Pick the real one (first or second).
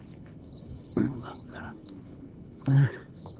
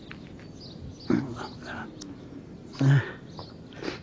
second